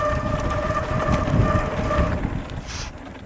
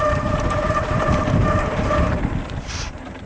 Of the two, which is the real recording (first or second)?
first